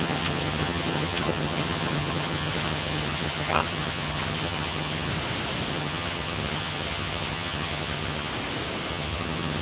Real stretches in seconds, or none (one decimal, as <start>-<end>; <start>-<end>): 5.1-5.7; 8.3-8.9